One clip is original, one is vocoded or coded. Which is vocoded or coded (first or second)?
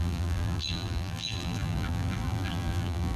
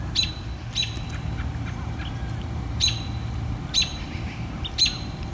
first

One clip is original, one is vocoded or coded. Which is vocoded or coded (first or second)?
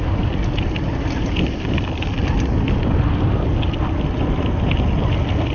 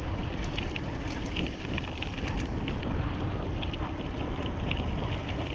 second